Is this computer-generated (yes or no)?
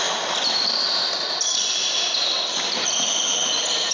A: no